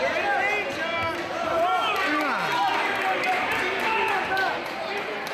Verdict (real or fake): real